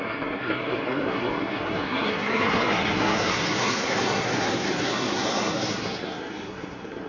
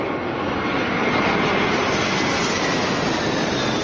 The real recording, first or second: second